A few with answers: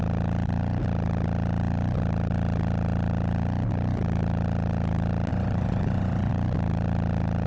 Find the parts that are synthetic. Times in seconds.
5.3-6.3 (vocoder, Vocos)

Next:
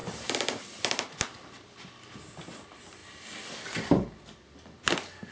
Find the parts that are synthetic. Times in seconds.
0.0-0.9 (vocoder, BigVGAN v2)

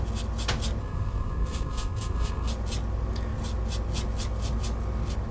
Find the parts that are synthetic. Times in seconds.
0.8-2.5 (codec, SNAC)

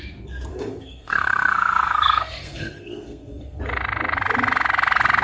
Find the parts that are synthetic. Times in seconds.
0.5-3.6 (codec, SNAC)

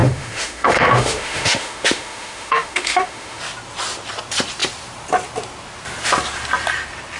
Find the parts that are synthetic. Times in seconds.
0.0-3.4 (autoencoder, DAC-VAE)